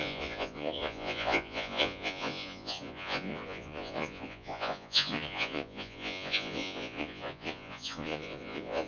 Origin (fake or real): fake